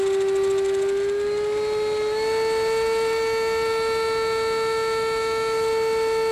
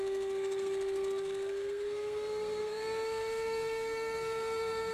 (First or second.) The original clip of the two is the first